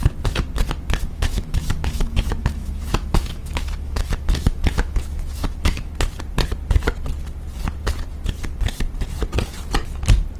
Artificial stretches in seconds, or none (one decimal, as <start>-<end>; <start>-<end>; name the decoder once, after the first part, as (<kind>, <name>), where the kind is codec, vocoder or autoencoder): 1.0-5.9 (autoencoder, DAC-VAE)